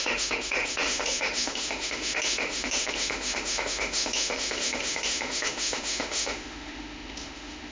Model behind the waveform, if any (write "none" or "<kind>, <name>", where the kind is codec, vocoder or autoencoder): autoencoder, DAC-VAE